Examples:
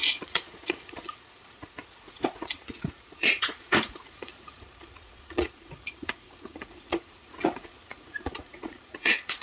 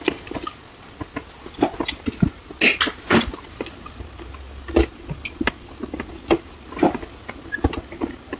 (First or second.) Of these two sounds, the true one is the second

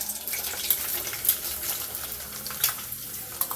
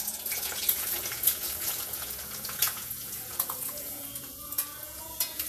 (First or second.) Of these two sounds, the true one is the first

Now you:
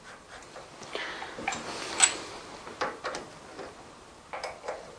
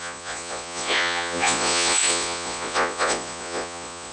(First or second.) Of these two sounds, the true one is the first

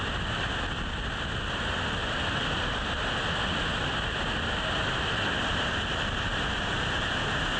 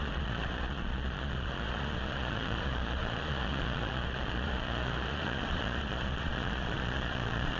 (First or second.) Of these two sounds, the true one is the first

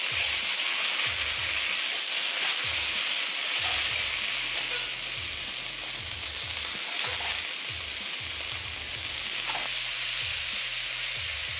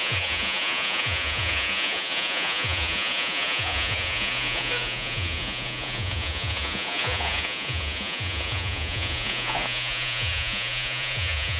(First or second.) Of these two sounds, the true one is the first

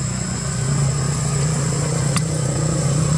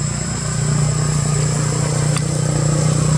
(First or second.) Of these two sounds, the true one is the second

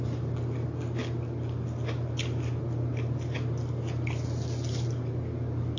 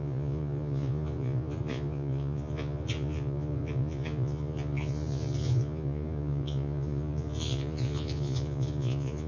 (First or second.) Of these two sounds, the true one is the first